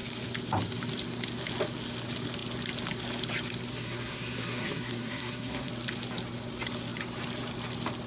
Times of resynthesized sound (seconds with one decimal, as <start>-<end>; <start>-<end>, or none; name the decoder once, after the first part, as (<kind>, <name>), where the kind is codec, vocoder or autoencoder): 3.7-5.7 (codec, SNAC)